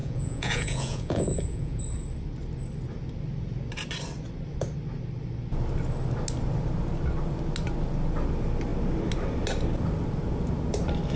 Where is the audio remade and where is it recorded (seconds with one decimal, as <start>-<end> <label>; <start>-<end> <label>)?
0.0-1.8 remade; 1.8-11.2 recorded